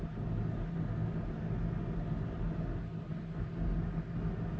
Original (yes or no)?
yes